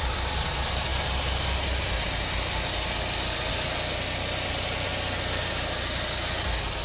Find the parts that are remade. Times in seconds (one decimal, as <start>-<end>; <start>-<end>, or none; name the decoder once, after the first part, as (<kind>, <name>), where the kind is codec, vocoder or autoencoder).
none